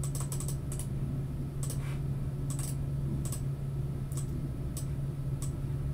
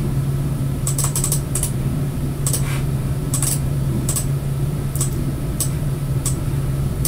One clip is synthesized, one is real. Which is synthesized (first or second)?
second